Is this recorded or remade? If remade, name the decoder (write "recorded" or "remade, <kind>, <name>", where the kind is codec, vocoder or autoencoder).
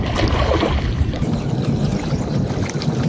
recorded